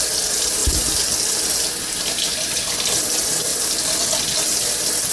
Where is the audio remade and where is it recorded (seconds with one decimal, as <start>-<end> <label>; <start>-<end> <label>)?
0.0-5.1 recorded